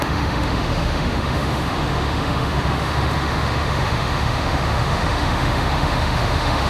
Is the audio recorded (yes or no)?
no